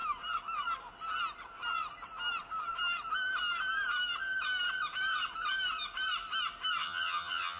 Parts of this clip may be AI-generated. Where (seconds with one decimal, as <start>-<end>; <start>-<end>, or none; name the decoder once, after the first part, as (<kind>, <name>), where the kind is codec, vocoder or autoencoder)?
6.8-7.6 (vocoder, HiFi-GAN)